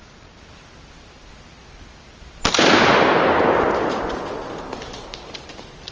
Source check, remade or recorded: recorded